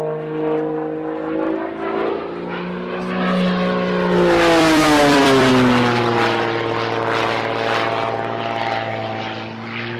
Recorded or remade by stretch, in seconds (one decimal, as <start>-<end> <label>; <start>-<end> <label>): 0.0-4.6 recorded; 4.6-5.5 remade; 5.5-10.0 recorded